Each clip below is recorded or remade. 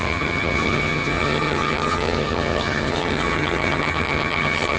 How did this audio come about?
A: remade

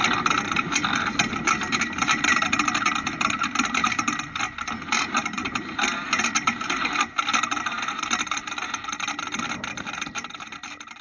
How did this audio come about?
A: recorded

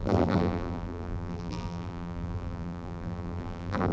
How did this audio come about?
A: remade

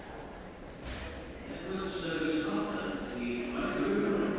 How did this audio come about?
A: recorded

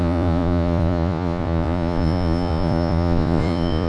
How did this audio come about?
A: remade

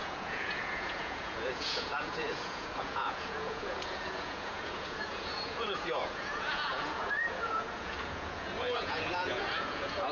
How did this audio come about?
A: remade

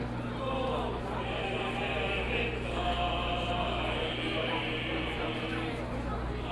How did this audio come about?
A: recorded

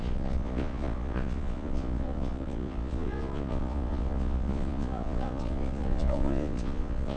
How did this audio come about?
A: remade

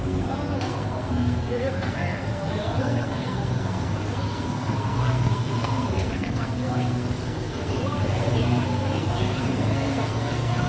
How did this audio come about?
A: remade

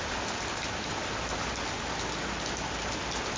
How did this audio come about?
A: recorded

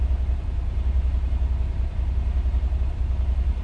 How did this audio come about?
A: recorded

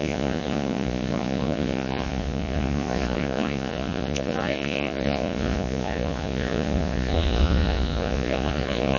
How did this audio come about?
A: remade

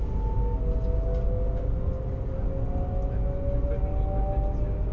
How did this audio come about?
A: recorded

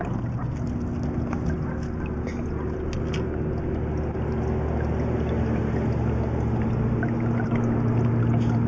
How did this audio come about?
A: recorded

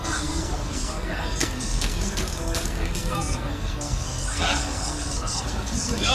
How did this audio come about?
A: remade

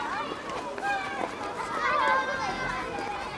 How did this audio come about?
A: recorded